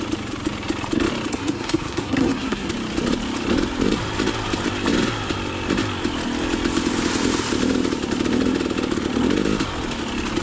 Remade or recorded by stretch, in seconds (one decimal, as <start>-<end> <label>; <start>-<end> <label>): 0.0-1.3 recorded; 1.3-2.7 remade; 2.7-10.4 recorded